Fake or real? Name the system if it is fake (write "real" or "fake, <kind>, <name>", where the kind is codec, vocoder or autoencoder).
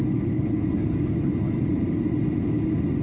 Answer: real